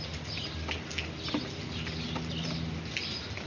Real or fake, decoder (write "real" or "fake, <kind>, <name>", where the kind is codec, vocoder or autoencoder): real